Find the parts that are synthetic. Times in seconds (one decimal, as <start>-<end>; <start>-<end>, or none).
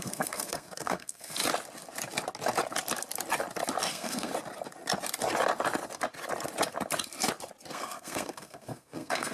0.0-1.4; 3.9-4.3; 7.7-9.3